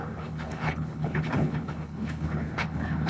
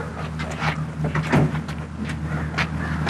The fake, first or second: first